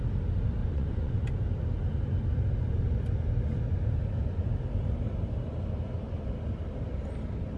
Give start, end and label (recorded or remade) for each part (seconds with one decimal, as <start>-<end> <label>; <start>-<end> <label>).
0.0-0.6 recorded; 0.6-1.2 remade; 1.2-7.6 recorded